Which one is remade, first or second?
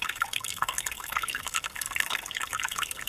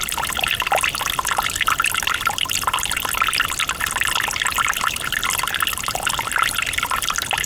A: first